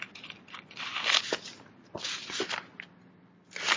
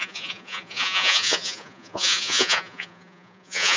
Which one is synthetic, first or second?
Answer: second